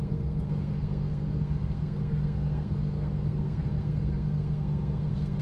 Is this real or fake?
fake